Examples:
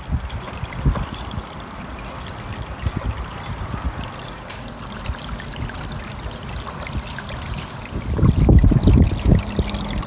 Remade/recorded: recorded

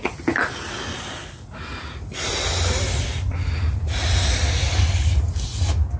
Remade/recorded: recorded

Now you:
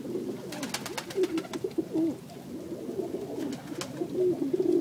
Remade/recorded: recorded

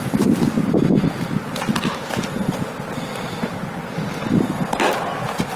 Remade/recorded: recorded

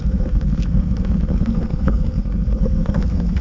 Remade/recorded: remade